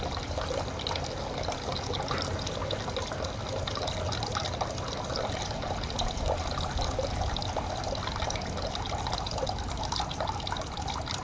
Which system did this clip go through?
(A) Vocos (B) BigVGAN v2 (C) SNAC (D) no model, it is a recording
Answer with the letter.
D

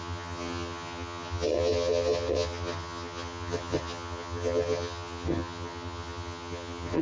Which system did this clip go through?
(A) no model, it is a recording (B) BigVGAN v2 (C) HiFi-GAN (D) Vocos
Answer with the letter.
C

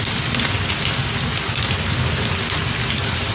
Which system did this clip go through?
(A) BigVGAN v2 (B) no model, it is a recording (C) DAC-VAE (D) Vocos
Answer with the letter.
B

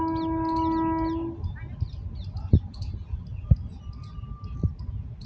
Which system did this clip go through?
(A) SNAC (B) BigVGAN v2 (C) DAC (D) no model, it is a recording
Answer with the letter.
D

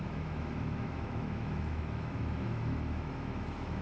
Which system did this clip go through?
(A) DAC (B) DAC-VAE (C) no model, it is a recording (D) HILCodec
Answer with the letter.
B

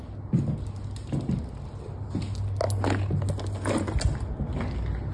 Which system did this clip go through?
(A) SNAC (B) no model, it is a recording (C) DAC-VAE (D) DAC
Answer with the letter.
B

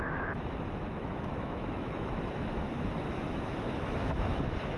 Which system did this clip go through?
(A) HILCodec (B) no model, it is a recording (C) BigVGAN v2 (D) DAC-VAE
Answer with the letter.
D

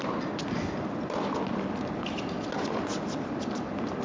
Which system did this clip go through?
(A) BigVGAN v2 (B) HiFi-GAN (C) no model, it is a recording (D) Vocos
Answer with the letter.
C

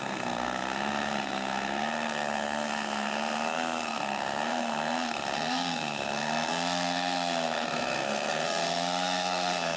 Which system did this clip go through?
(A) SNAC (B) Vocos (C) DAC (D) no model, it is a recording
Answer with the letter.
A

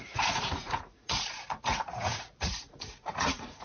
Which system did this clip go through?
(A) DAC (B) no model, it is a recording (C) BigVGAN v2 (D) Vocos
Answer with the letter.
D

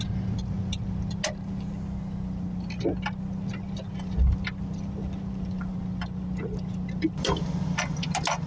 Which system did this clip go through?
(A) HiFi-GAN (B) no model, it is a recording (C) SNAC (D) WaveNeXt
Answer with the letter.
B